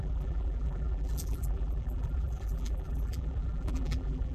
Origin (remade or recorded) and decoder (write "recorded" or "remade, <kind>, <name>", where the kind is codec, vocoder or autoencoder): remade, vocoder, BigVGAN v2